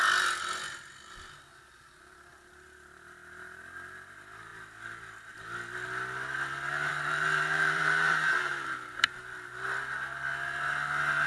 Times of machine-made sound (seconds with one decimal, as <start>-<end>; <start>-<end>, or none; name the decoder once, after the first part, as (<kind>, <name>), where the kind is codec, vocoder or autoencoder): 6.9-8.5 (vocoder, BigVGAN v2)